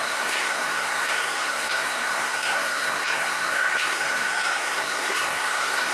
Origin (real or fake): fake